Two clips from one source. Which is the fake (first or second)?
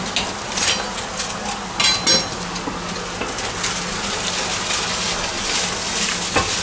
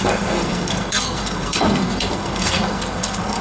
second